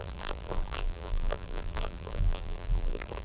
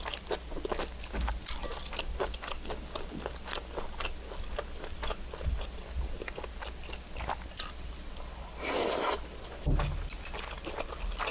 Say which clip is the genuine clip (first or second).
second